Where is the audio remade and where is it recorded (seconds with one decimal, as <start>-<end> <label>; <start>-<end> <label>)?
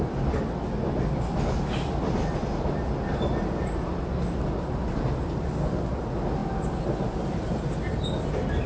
0.0-8.7 recorded